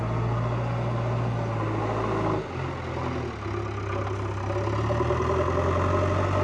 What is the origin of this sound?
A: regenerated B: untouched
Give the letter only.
B